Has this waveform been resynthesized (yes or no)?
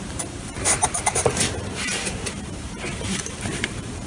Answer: yes